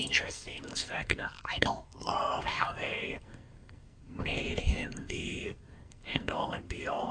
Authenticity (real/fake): fake